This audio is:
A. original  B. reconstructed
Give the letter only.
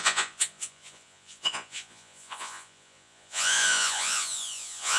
B